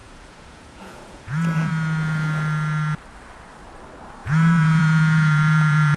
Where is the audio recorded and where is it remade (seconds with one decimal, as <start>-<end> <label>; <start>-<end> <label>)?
0.0-1.7 remade; 1.7-4.2 recorded; 4.2-6.0 remade